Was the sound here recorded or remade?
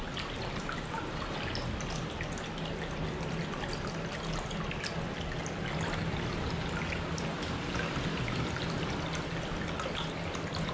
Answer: recorded